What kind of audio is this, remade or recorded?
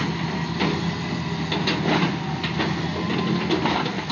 recorded